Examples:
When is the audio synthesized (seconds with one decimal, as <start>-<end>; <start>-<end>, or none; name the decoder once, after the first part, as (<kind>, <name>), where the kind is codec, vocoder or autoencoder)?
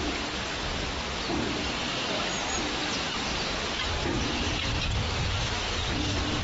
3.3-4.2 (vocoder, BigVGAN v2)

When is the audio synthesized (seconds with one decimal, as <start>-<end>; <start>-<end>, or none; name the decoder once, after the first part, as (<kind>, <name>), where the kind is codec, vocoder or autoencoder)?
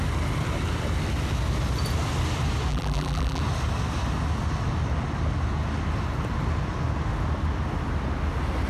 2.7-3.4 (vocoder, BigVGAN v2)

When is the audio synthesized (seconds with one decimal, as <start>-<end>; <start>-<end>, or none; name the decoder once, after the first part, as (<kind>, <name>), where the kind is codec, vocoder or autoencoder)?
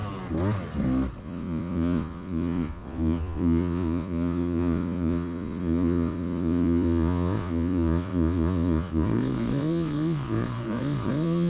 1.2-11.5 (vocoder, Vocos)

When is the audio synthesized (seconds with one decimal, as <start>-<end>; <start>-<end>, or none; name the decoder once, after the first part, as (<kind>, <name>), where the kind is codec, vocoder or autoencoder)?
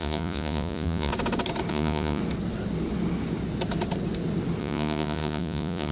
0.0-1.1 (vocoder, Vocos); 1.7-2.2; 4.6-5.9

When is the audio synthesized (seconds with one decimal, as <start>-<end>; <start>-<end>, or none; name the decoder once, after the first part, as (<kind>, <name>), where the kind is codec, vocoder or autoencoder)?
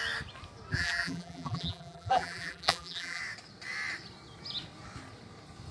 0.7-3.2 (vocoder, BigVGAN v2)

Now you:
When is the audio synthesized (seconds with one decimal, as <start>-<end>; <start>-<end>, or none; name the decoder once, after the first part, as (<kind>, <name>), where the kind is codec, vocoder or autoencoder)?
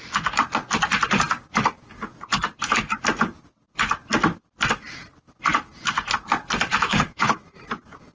6.7-7.4 (autoencoder, DAC-VAE)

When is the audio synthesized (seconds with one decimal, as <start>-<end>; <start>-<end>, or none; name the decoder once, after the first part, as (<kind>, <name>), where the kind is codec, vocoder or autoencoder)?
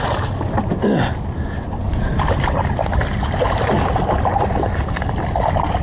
none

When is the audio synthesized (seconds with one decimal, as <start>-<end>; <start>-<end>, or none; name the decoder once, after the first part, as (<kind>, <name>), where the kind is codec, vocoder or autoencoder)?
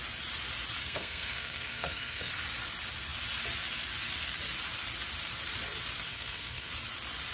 0.8-2.3 (codec, SNAC); 6.1-6.7